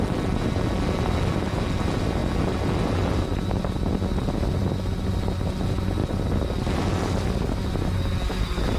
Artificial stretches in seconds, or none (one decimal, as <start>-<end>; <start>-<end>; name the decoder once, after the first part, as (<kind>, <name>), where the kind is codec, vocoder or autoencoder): none